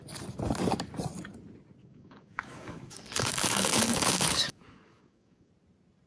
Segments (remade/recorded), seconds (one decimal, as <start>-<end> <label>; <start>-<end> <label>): 0.0-1.8 recorded; 1.8-5.5 remade; 5.5-6.1 recorded